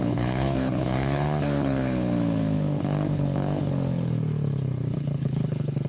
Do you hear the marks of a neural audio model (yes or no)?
yes